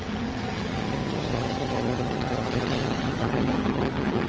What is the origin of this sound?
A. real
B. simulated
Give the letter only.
B